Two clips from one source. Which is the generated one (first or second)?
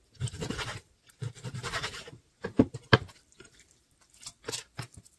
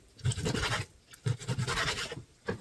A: first